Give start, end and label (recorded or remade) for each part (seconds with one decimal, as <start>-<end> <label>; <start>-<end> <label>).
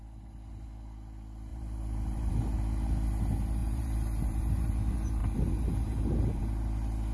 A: 0.0-1.5 recorded; 1.5-2.3 remade; 2.3-3.6 recorded; 3.6-4.6 remade; 4.6-5.2 recorded; 5.2-6.4 remade; 6.4-7.1 recorded